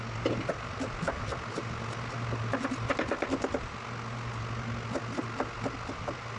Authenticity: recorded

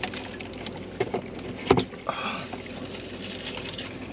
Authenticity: recorded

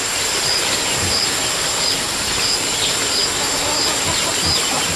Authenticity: recorded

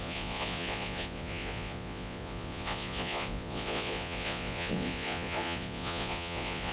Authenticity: remade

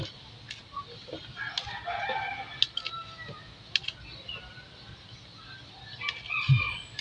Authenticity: recorded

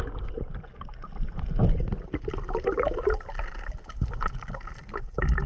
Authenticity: recorded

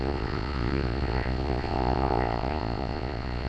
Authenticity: remade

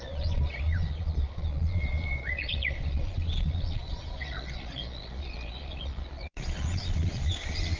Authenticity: remade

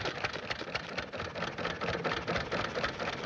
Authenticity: recorded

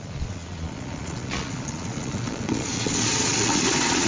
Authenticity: remade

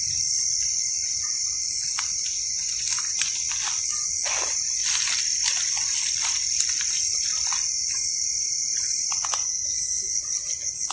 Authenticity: recorded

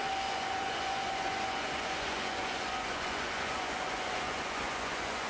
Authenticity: remade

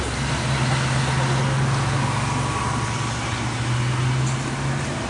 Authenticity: recorded